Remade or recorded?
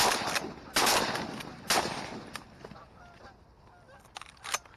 recorded